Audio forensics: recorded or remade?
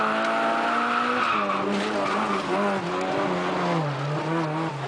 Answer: recorded